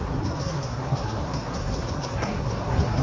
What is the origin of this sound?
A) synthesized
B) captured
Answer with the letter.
A